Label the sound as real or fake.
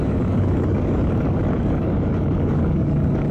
fake